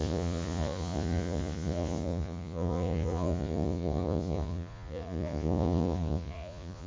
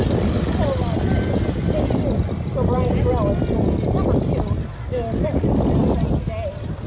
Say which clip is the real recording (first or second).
second